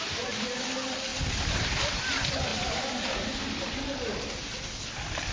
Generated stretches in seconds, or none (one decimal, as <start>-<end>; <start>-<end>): none